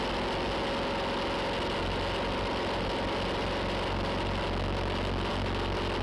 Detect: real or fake real